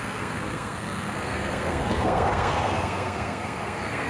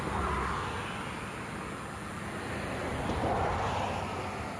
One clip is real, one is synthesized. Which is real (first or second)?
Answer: second